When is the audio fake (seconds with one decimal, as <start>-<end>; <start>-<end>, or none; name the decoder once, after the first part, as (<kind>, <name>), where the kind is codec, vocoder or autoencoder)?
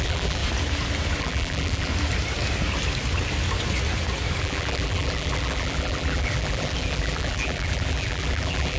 0.0-0.4 (vocoder, BigVGAN v2); 1.2-1.9; 4.4-8.8